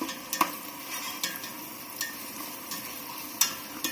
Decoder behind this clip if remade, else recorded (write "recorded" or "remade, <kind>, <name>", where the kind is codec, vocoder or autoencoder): recorded